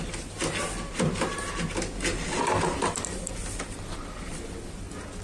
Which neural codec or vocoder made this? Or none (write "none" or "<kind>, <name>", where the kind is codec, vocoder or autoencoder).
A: none